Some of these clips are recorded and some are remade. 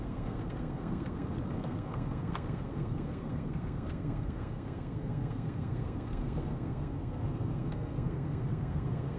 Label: remade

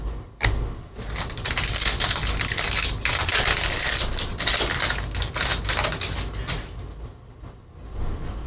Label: recorded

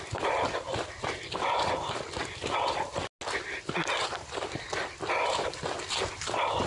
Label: recorded